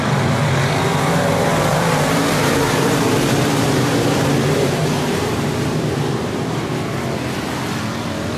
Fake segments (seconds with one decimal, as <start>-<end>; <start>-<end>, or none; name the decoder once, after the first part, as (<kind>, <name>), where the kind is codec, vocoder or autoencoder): 1.7-3.9 (vocoder, BigVGAN v2); 4.8-6.4

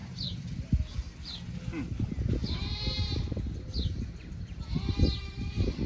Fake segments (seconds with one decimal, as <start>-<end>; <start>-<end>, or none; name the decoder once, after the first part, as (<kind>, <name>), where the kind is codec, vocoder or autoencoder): 0.0-0.8 (vocoder, BigVGAN v2)

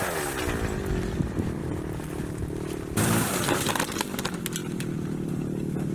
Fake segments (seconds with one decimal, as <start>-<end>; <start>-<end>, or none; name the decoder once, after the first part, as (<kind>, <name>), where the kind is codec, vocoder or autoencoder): 1.6-3.8 (vocoder, BigVGAN v2); 4.6-5.3